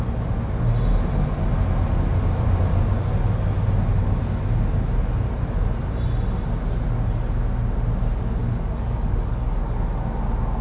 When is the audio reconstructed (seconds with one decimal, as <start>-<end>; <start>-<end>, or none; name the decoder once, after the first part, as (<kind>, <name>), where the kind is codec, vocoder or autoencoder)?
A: 8.4-9.7 (codec, DAC)